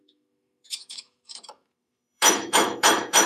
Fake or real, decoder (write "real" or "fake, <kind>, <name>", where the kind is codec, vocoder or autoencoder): fake, autoencoder, DAC-VAE